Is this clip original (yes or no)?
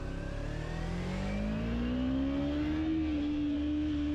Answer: yes